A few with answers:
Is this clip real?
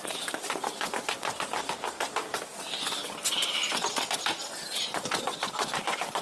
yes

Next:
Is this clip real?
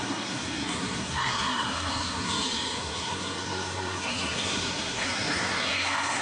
no